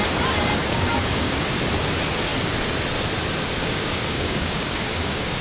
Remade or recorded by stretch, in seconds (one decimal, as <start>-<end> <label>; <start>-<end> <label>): 0.0-0.6 recorded; 0.6-1.6 remade; 1.6-3.6 recorded; 3.6-5.4 remade